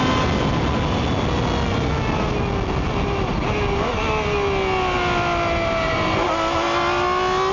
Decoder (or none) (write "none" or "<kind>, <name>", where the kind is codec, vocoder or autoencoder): none